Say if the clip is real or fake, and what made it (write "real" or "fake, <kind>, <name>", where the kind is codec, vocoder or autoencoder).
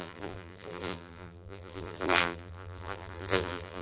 fake, vocoder, BigVGAN v2